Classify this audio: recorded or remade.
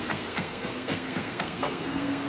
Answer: remade